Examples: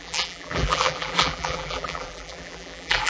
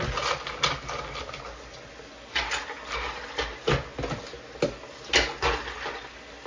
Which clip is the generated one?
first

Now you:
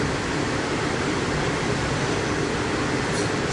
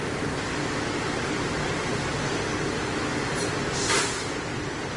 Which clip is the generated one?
first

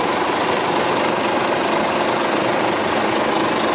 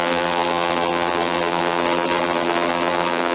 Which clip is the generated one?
second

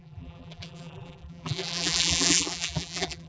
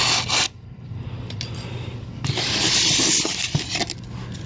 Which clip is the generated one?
first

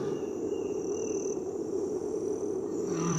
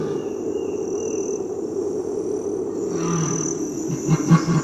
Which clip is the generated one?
first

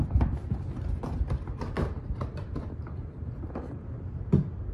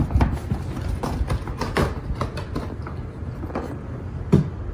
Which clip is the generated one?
first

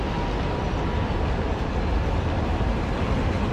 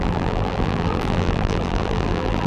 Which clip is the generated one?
second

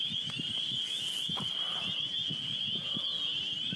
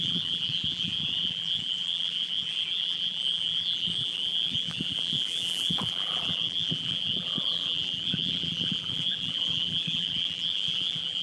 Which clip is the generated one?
second